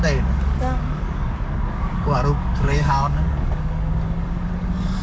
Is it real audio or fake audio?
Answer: fake